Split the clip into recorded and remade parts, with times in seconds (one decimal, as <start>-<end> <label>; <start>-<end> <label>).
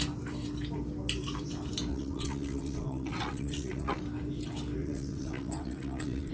0.0-1.9 recorded; 1.9-4.0 remade; 4.0-4.8 recorded; 4.8-6.3 remade